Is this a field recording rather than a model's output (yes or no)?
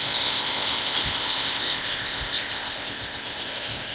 no